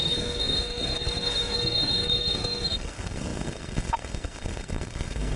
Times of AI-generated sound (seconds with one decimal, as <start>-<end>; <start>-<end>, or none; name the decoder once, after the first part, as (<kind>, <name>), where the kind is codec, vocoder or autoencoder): 0.0-5.4 (codec, SNAC)